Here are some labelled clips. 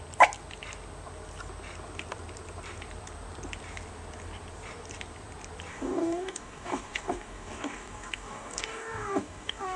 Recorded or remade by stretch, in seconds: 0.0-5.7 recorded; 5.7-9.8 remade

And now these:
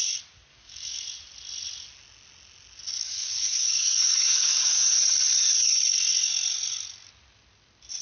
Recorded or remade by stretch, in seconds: 0.0-0.5 recorded; 0.5-1.0 remade; 1.0-3.0 recorded; 3.0-4.8 remade; 4.8-8.0 recorded

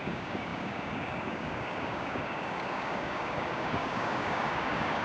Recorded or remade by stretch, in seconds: 0.0-5.0 remade

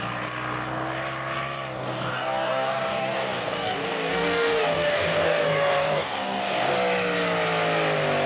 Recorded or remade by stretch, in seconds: 0.0-1.8 recorded; 1.8-6.7 remade; 6.7-8.3 recorded

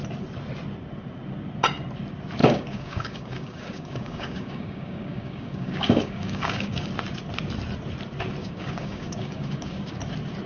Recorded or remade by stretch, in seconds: 0.0-2.4 recorded; 2.4-6.9 remade; 6.9-8.4 recorded; 8.4-10.0 remade; 10.0-10.5 recorded

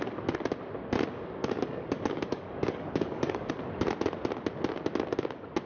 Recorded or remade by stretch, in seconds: 0.0-1.4 recorded; 1.4-3.5 remade; 3.5-5.7 recorded